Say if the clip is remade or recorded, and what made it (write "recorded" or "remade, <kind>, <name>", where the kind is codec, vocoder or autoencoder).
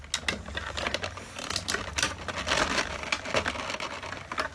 recorded